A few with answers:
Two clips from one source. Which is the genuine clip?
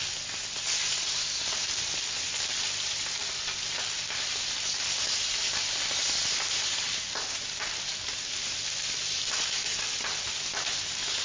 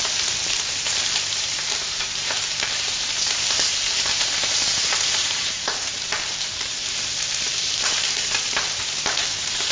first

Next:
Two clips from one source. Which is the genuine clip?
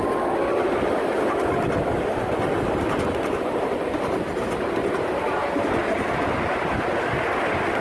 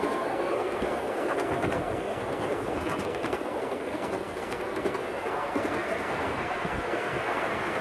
first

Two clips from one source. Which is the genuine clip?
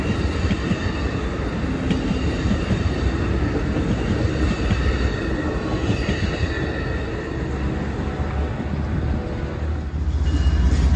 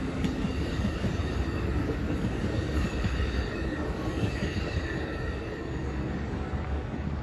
first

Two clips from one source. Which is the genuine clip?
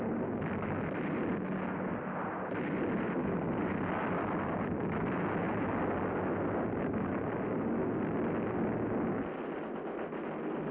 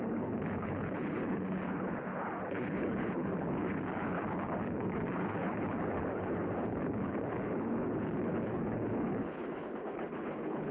first